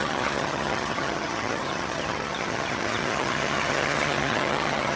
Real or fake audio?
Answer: fake